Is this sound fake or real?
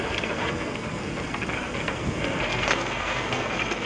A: fake